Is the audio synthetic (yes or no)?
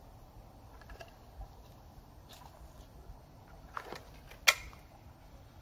no